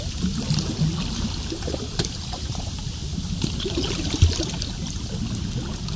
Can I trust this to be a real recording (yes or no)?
yes